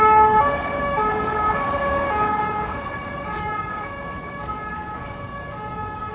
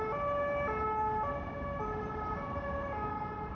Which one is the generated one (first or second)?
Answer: first